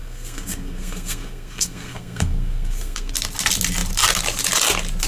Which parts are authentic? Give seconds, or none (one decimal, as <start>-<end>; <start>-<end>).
3.1-5.1